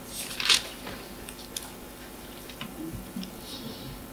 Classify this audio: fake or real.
real